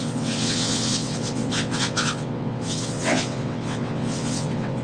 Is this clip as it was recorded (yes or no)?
no